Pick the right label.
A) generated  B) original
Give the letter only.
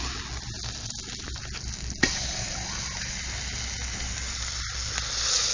B